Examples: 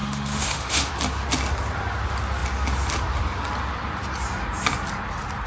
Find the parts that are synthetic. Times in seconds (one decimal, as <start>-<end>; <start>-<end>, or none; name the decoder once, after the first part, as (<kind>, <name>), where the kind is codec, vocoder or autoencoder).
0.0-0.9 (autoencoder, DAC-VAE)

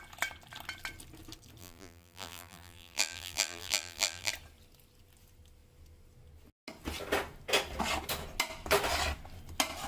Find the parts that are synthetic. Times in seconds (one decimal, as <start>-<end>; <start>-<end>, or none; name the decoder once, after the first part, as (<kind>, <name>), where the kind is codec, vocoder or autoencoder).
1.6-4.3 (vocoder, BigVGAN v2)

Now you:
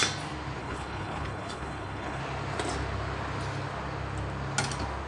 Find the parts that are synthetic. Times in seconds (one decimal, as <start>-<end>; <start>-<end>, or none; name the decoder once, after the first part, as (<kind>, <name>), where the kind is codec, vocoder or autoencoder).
0.6-2.2 (codec, HILCodec)